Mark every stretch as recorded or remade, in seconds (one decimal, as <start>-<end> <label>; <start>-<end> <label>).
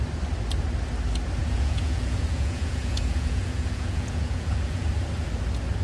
0.0-1.4 recorded; 1.4-4.9 remade; 4.9-5.8 recorded